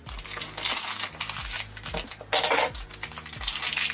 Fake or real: real